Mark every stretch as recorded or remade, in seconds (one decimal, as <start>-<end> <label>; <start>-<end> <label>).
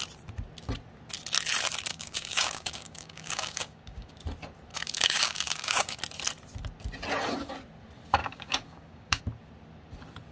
0.0-1.9 recorded; 1.9-4.1 remade; 4.1-4.7 recorded; 4.7-6.0 remade; 6.0-8.2 recorded; 8.2-9.2 remade; 9.2-10.3 recorded